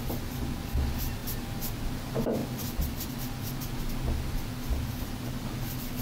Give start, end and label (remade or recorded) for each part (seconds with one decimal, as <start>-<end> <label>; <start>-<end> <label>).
0.0-6.0 recorded